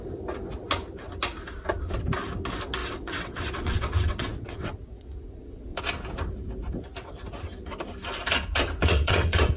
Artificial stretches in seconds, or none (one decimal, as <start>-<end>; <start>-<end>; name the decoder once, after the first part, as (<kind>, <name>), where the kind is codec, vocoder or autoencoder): 2.8-5.8 (vocoder, WaveNeXt); 8.8-9.6